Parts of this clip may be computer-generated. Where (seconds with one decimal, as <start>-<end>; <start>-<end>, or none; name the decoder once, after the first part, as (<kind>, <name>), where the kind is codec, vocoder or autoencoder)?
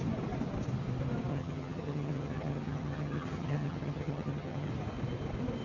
1.3-4.7 (vocoder, HiFi-GAN)